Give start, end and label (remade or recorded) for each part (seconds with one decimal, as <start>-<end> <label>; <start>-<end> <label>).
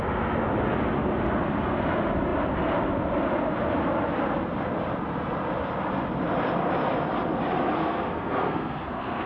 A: 0.0-7.8 recorded; 7.8-9.3 remade